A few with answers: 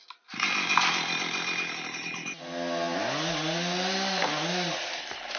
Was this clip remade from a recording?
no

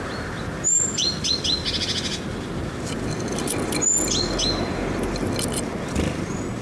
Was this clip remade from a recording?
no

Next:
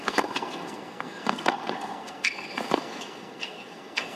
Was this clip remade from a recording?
yes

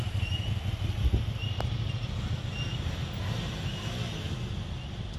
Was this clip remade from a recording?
no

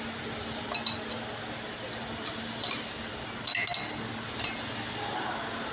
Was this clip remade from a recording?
no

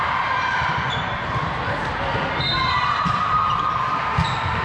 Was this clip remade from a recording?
no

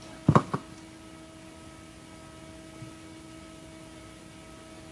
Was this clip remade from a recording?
no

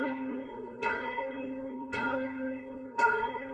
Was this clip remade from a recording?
yes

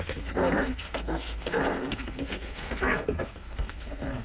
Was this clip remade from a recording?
yes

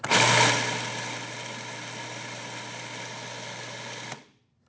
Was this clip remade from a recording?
no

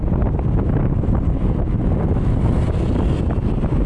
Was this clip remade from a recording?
no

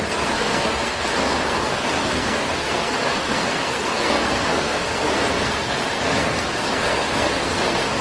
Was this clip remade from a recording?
yes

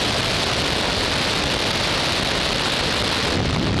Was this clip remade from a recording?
no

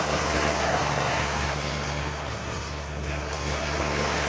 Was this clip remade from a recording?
yes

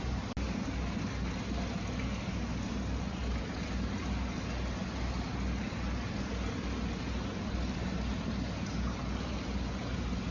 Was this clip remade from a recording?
no